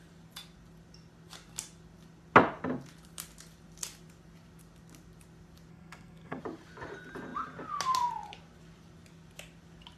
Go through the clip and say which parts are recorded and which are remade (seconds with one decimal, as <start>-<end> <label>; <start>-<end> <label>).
0.0-5.7 recorded; 5.7-6.4 remade; 6.4-10.0 recorded